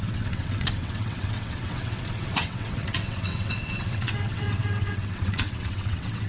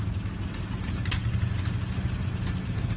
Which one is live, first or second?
second